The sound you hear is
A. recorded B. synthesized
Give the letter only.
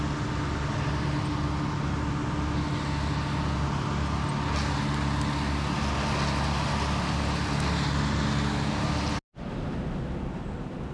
A